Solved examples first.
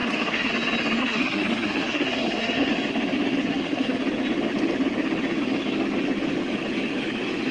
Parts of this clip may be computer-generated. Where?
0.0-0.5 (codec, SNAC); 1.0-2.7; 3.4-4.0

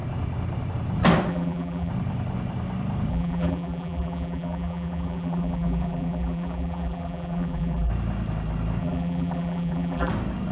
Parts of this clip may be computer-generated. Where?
1.3-1.9 (vocoder, BigVGAN v2); 3.1-7.9; 8.8-10.1

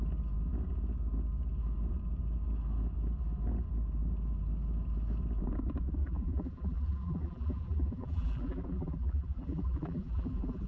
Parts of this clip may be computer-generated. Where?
6.0-10.7 (vocoder, BigVGAN v2)

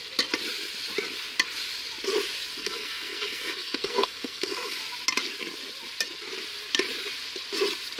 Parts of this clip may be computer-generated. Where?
2.6-4.8 (codec, SNAC)